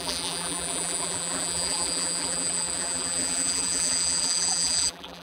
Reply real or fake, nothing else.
fake